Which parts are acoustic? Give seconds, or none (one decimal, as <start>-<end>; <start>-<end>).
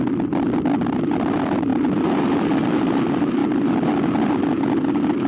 0.0-5.3